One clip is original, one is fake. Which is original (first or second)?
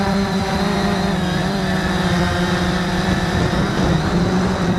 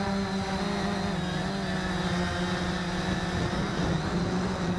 second